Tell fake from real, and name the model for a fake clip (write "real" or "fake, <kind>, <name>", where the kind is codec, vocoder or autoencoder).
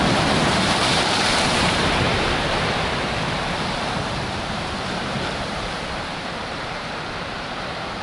fake, vocoder, BigVGAN v2